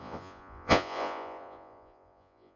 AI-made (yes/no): yes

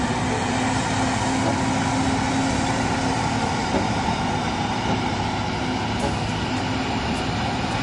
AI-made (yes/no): no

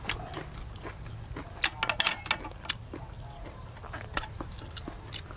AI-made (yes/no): no